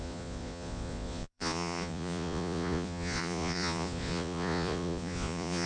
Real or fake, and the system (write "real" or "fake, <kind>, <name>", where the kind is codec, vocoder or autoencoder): fake, vocoder, Vocos